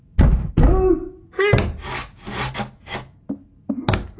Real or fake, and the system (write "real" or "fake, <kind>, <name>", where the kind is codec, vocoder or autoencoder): real